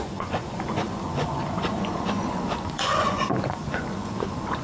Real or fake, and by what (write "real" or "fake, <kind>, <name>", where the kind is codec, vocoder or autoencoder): fake, vocoder, Vocos